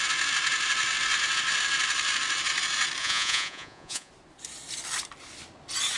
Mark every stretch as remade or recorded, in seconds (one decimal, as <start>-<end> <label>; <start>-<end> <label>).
0.0-3.0 recorded; 3.0-4.1 remade; 4.1-6.0 recorded